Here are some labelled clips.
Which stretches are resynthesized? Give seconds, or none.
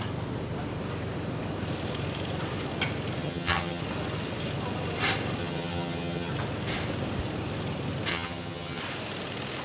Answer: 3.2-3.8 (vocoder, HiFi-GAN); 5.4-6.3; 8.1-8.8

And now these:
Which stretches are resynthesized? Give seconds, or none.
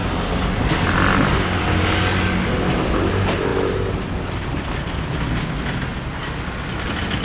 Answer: none